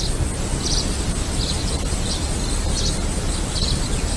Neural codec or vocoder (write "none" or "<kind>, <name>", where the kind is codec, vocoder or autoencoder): none